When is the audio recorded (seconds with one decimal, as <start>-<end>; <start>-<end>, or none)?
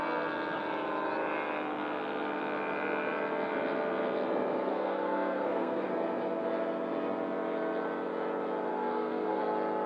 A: 0.0-4.7; 5.9-8.7; 9.4-9.9